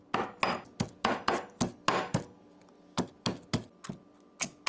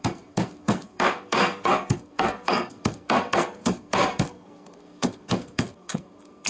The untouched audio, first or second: first